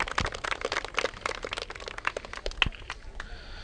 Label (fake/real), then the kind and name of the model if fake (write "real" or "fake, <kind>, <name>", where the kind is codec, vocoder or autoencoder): real